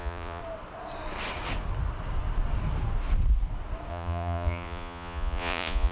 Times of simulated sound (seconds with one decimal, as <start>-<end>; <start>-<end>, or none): 0.0-0.4; 3.9-5.9